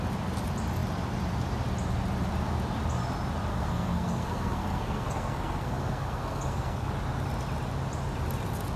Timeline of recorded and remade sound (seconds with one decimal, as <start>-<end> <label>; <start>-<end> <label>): 0.0-3.5 recorded; 3.5-6.9 remade; 6.9-8.8 recorded